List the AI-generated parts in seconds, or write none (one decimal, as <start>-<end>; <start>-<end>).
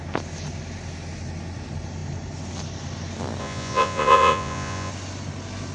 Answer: 3.4-4.9